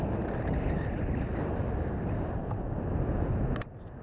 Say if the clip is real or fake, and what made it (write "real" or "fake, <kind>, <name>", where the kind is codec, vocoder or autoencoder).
real